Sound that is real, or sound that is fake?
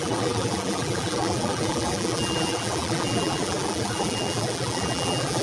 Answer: fake